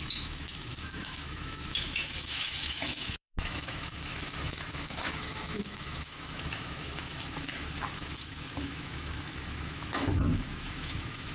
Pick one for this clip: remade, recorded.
remade